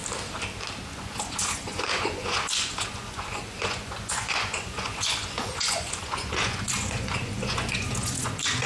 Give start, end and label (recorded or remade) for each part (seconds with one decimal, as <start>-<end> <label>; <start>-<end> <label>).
0.0-0.9 recorded; 0.9-8.7 remade